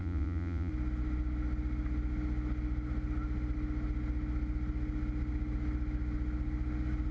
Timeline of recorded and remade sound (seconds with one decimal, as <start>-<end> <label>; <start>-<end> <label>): 0.0-0.7 remade; 0.7-7.1 recorded